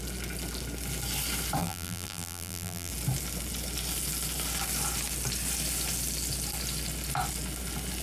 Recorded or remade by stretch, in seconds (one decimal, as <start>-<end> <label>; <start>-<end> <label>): 0.0-1.6 recorded; 1.6-2.9 remade; 2.9-8.0 recorded